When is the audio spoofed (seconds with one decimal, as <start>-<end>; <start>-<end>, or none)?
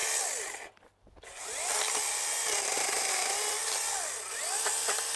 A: none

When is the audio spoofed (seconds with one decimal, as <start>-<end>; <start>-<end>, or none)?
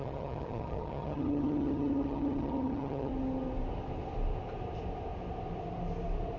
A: 0.0-3.1